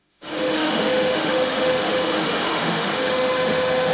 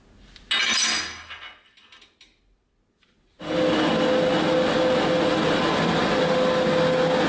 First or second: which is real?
second